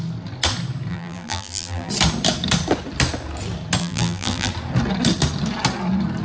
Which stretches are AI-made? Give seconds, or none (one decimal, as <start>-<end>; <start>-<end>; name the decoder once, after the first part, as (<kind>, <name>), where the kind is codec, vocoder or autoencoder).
0.9-1.9 (vocoder, BigVGAN v2); 3.8-4.5